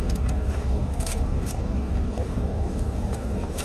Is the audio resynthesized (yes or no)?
yes